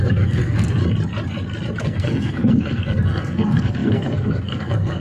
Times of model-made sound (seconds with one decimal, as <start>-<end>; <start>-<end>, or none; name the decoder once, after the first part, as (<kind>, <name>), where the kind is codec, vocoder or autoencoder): 0.0-0.8 (codec, SNAC); 1.8-5.0